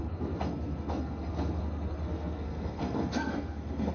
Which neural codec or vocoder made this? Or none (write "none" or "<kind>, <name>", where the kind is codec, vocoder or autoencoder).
codec, SNAC